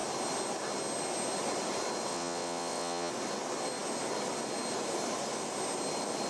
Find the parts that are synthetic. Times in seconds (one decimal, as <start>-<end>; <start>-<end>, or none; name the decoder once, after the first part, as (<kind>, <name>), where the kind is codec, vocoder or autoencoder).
2.1-3.1 (vocoder, WaveNeXt)